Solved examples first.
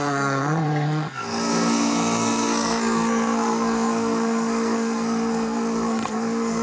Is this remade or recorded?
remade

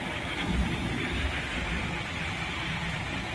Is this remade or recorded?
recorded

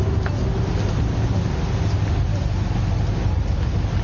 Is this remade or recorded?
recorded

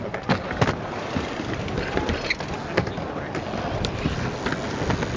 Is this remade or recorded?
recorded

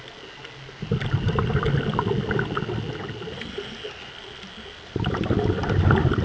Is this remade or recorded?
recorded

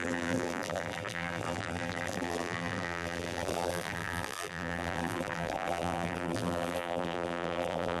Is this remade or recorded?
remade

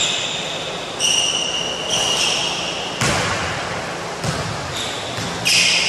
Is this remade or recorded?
recorded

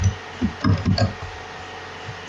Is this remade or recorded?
recorded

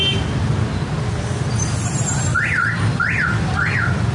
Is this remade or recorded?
recorded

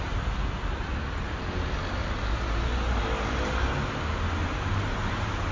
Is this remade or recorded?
recorded